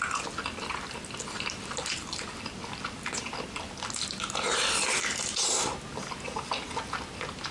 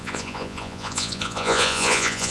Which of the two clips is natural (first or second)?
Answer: first